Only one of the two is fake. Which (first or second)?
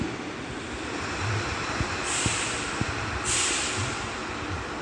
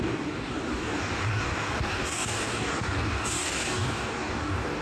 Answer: second